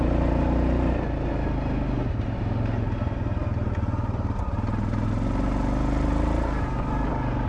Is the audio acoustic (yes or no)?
yes